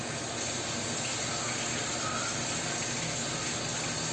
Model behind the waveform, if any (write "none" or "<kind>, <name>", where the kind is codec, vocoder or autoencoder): none